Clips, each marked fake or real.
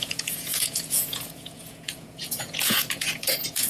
fake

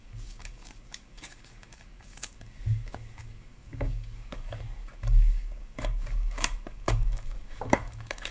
fake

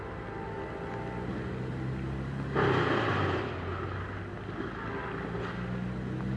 real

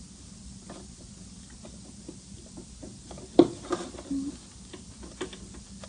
real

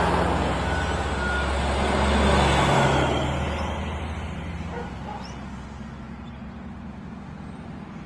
real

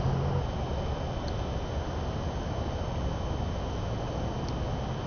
real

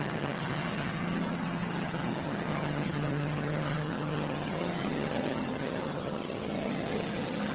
fake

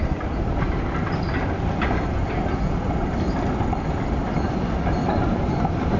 real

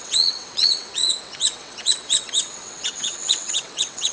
fake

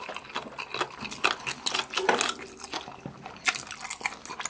real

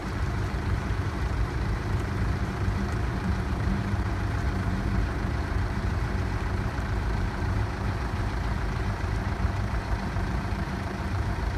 fake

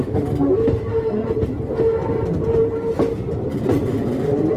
real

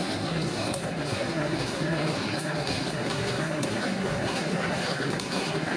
fake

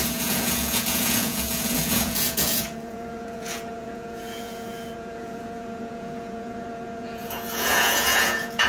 fake